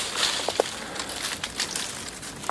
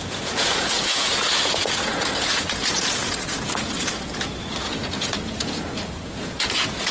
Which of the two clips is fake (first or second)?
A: second